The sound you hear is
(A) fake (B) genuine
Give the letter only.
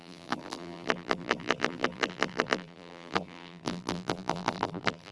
A